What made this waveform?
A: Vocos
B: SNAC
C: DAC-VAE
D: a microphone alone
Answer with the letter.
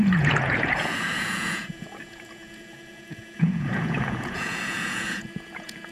A